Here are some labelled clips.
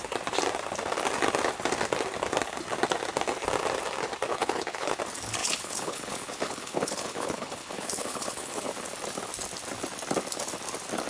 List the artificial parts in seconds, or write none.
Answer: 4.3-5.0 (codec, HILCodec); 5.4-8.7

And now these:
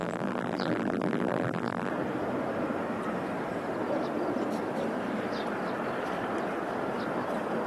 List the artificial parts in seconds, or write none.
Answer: 0.0-1.9 (vocoder, BigVGAN v2)

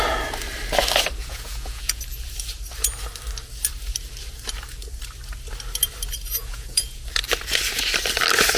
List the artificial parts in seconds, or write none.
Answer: 1.2-2.0 (vocoder, Vocos); 6.4-7.0

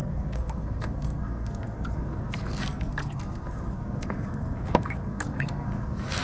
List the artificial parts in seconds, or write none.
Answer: 0.0-6.2 (codec, SNAC)

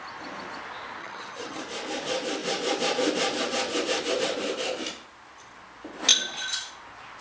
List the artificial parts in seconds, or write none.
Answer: 1.0-1.6 (vocoder, HiFi-GAN)

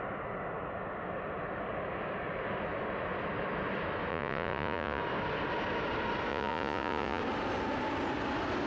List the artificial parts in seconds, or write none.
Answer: 4.1-5.0 (vocoder, Vocos); 6.3-7.2